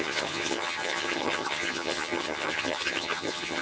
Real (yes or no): no